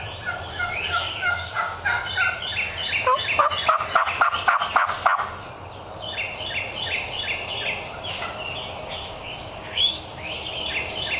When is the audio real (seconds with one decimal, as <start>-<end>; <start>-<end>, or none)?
0.0-0.5; 2.1-9.0; 10.3-11.2